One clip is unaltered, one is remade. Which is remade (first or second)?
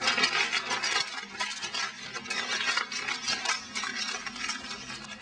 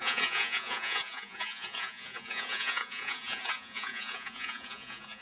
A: second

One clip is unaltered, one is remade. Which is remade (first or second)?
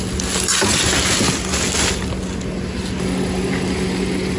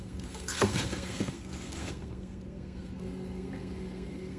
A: second